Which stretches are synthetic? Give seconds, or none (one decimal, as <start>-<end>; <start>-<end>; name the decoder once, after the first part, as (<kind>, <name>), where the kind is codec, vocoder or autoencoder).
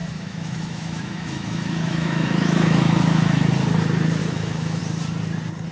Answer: 0.0-3.4 (autoencoder, DAC-VAE); 4.2-4.8